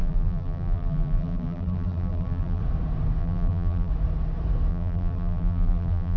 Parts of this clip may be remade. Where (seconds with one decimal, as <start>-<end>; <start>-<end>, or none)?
0.0-2.6; 3.2-3.9; 4.7-6.2